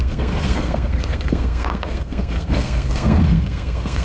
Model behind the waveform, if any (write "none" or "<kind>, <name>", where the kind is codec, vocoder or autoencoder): codec, SNAC